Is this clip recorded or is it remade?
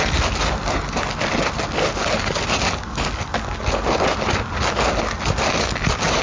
recorded